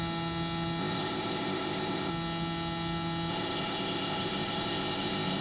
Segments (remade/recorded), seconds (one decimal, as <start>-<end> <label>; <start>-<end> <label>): 0.0-0.8 recorded; 0.8-2.1 remade; 2.1-3.3 recorded; 3.3-5.4 remade

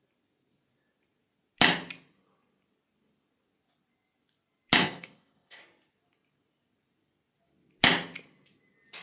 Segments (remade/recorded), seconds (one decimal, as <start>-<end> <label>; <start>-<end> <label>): 0.0-4.8 recorded; 4.8-5.6 remade; 5.6-9.0 recorded

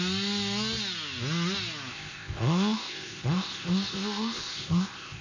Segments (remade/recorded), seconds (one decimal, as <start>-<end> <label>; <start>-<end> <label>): 0.0-1.9 recorded; 1.9-5.2 remade

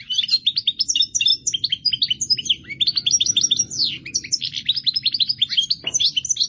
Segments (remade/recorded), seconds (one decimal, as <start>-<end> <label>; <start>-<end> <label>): 0.0-6.5 recorded

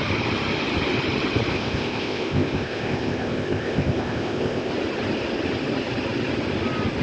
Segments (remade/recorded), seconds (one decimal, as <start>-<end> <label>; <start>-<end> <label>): 0.0-1.5 recorded; 1.5-4.7 remade; 4.7-7.0 recorded

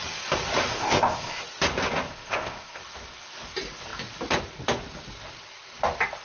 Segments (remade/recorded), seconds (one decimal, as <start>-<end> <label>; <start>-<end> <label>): 0.0-0.7 recorded; 0.7-1.4 remade; 1.4-2.1 recorded; 2.1-2.8 remade; 2.8-6.2 recorded

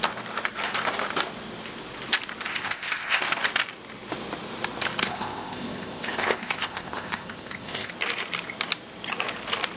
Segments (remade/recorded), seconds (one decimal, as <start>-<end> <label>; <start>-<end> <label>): 0.0-2.5 recorded; 2.5-3.2 remade; 3.2-5.0 recorded; 5.0-7.9 remade; 7.9-9.8 recorded

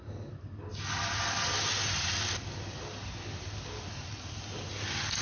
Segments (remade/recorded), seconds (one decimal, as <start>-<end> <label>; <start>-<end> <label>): 0.0-5.2 recorded